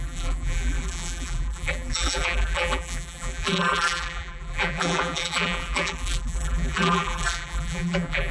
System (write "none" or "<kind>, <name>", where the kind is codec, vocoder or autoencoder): vocoder, BigVGAN v2